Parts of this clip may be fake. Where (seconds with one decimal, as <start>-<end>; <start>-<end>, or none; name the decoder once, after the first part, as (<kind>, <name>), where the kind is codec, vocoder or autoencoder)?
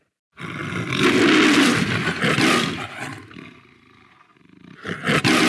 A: 1.8-5.1 (vocoder, BigVGAN v2)